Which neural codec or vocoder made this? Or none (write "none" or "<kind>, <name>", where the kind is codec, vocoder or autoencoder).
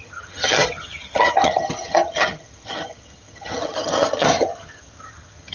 vocoder, HiFi-GAN